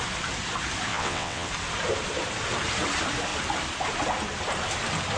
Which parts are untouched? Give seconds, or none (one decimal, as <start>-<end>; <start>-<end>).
0.0-0.9; 1.5-5.2